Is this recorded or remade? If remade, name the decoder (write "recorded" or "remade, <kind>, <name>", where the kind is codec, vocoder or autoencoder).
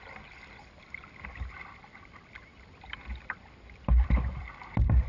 remade, vocoder, BigVGAN v2